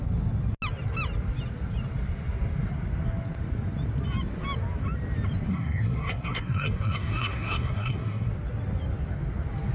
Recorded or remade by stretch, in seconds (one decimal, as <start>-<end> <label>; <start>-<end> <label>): 0.0-5.5 recorded; 5.5-8.3 remade; 8.3-9.7 recorded